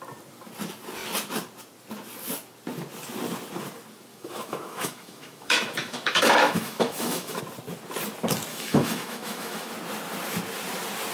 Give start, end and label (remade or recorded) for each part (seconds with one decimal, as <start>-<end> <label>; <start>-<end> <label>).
0.0-4.1 recorded; 4.1-7.4 remade; 7.4-8.5 recorded; 8.5-9.7 remade; 9.7-11.1 recorded